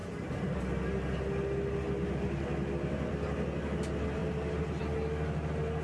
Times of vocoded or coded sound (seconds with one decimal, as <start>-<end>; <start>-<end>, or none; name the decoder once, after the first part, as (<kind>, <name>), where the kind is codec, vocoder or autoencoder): none